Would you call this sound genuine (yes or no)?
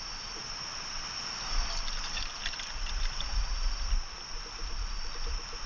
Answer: yes